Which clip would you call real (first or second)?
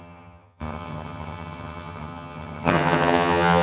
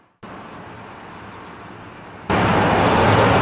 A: second